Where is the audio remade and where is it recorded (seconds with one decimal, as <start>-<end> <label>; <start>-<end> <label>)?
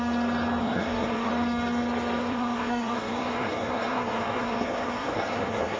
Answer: 0.0-0.6 recorded; 0.6-1.3 remade; 1.3-2.2 recorded; 2.2-5.8 remade